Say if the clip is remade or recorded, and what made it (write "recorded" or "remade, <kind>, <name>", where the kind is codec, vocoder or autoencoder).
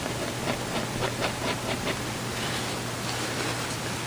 recorded